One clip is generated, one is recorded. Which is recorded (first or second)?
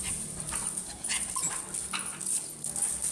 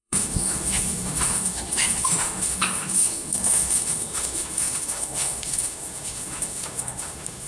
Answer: first